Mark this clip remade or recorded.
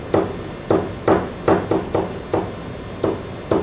recorded